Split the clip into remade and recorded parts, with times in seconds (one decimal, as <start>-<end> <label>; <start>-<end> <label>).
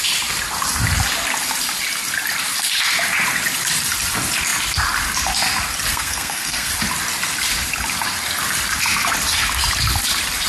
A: 0.0-5.9 recorded; 5.9-6.7 remade; 6.7-10.5 recorded